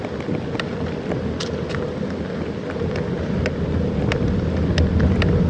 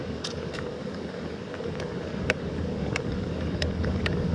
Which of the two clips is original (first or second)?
first